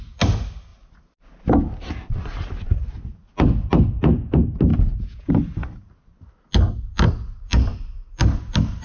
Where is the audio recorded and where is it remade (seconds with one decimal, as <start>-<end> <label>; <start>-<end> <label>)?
0.0-4.7 recorded; 4.7-5.3 remade; 5.3-8.8 recorded